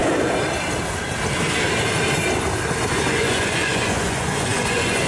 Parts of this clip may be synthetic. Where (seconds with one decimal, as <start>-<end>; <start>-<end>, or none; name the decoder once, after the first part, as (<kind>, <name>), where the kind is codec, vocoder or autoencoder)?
3.1-5.1 (vocoder, Vocos)